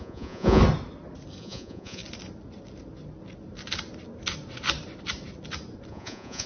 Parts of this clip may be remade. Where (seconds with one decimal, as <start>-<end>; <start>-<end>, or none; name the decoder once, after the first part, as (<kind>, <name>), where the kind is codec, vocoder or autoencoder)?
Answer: 0.0-0.6 (vocoder, Vocos); 1.4-2.0; 5.9-6.5